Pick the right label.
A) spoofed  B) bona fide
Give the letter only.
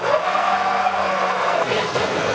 A